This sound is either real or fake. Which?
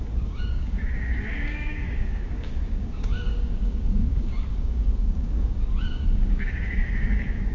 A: fake